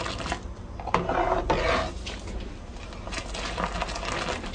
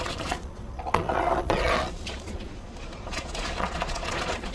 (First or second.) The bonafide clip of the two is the first